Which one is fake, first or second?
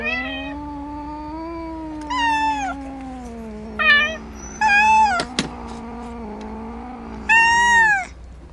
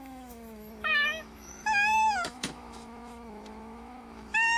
second